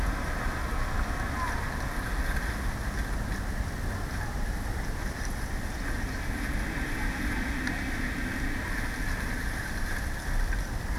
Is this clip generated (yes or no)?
no